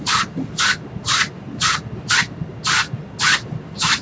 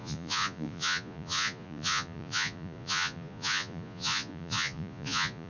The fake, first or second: second